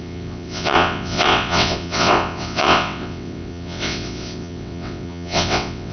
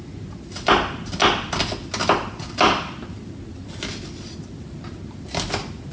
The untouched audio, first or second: second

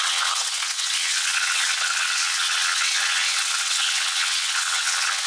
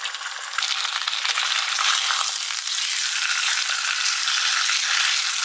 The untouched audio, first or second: second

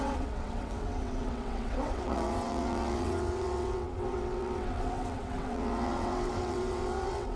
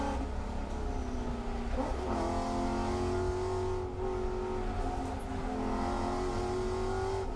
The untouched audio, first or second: second